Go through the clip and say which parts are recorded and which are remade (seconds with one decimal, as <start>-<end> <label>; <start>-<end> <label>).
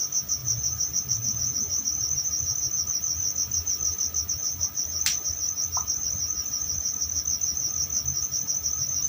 0.0-9.1 recorded